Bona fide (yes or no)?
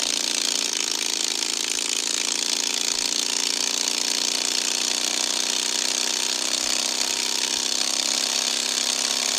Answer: yes